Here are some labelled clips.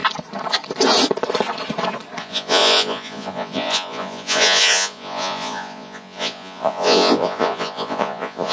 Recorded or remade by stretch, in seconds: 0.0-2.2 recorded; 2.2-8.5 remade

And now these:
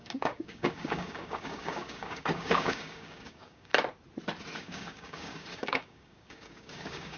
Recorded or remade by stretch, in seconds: 0.0-3.7 remade; 3.7-4.6 recorded; 4.6-7.2 remade

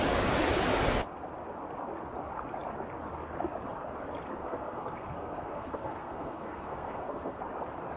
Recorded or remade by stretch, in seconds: 0.0-4.4 recorded; 4.4-7.4 remade; 7.4-8.0 recorded

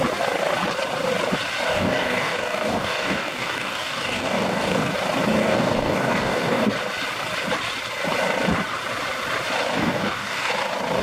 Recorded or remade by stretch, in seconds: 0.0-1.7 recorded; 1.7-4.9 remade; 4.9-5.4 recorded; 5.4-6.7 remade; 6.7-9.8 recorded; 9.8-10.5 remade; 10.5-11.0 recorded

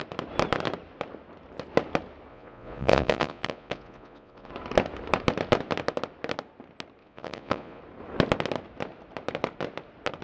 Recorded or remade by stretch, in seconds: 0.0-2.3 recorded; 2.3-4.5 remade; 4.5-7.0 recorded; 7.0-7.8 remade; 7.8-10.2 recorded

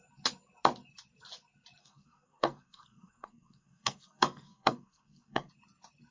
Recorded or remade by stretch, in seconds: 0.0-1.8 recorded; 1.8-5.5 remade; 5.5-6.1 recorded

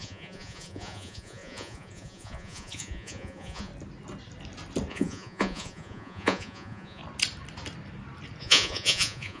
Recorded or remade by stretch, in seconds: 0.0-3.7 remade; 3.7-4.9 recorded; 4.9-7.0 remade; 7.0-8.4 recorded; 8.4-9.4 remade

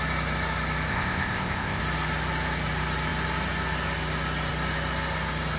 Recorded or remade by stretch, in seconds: 0.0-0.9 recorded; 0.9-1.8 remade; 1.8-5.6 recorded